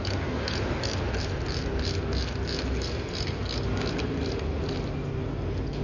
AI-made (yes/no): no